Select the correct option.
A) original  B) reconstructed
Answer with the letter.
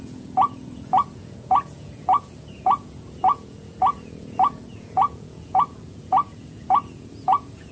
B